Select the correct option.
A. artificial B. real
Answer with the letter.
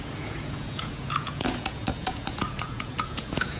A